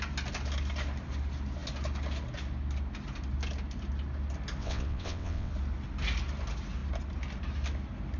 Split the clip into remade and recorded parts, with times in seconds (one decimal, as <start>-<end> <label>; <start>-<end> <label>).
0.0-4.6 recorded; 4.6-5.5 remade; 5.5-8.2 recorded